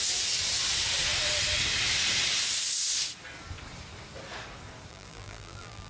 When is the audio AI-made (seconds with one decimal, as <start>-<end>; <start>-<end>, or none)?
4.9-5.9